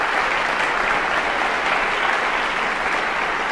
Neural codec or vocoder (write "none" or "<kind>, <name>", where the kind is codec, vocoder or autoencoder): none